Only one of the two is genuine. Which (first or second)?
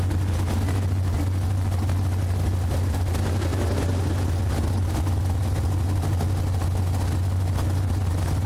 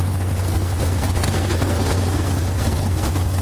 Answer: first